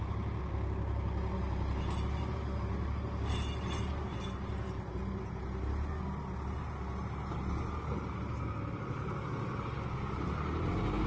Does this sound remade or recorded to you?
recorded